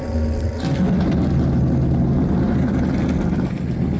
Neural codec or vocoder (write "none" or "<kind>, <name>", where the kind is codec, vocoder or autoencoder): none